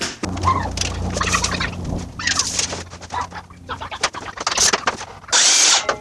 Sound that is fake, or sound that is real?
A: real